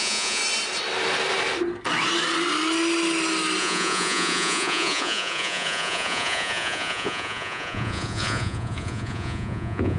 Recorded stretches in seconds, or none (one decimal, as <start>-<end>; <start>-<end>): 0.4-3.6